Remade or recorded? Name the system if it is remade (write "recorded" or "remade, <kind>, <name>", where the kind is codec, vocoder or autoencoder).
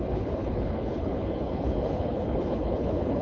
remade, codec, HILCodec